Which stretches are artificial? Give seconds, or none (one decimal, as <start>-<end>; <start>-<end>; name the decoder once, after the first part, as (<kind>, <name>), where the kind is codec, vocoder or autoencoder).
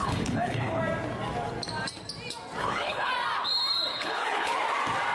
0.0-0.8 (codec, HILCodec); 2.6-3.1; 3.9-4.5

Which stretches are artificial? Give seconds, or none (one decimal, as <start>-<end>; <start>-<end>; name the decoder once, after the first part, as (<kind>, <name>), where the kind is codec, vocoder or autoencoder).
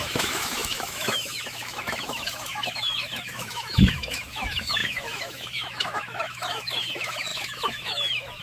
0.0-8.4 (autoencoder, DAC-VAE)